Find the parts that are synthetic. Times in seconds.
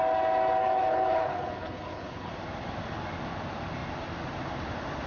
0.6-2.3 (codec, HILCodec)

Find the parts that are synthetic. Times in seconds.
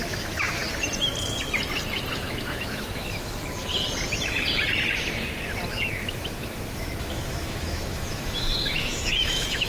0.0-0.6 (autoencoder, DAC-VAE); 2.1-3.7; 5.7-9.7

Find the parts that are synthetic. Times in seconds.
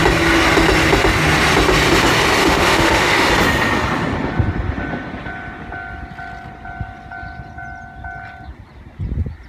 2.4-3.3 (autoencoder, DAC-VAE)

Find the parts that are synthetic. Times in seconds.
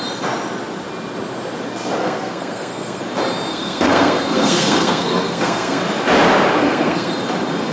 2.0-3.0 (codec, SNAC); 3.5-5.8; 6.6-7.1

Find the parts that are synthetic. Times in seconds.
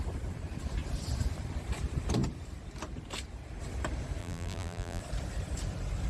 4.2-5.0 (vocoder, BigVGAN v2)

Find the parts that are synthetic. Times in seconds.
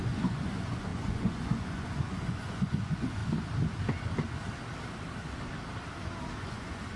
0.0-3.2 (vocoder, Vocos); 6.4-7.0